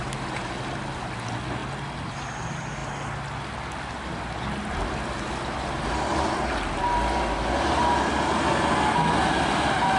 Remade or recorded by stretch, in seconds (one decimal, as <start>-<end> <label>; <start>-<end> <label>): 0.0-10.0 recorded